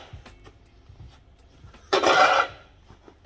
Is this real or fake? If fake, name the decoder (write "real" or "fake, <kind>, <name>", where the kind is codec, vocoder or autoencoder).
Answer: real